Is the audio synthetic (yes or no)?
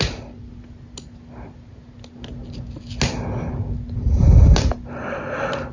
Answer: no